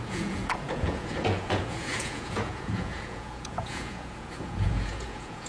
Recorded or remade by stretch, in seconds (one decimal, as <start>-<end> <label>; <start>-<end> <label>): 0.0-5.5 remade